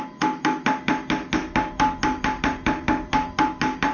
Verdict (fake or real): real